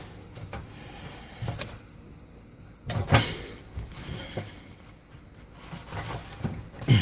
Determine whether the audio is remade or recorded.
remade